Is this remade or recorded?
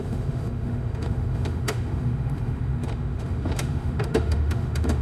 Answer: remade